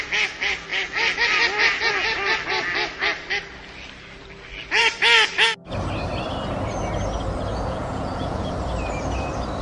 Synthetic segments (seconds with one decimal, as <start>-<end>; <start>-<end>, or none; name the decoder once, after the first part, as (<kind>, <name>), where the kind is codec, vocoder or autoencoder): 7.5-8.5 (vocoder, Vocos)